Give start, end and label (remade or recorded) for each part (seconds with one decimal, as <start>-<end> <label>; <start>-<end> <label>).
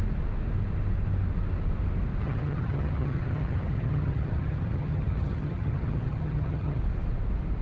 0.0-2.2 recorded; 2.2-6.8 remade; 6.8-7.6 recorded